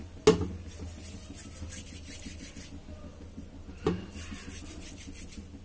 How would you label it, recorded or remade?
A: recorded